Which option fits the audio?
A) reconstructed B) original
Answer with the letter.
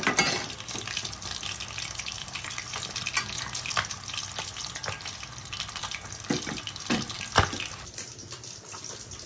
B